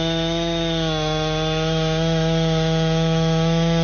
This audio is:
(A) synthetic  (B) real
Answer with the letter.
A